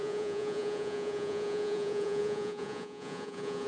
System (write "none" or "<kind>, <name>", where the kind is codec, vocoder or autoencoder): vocoder, Vocos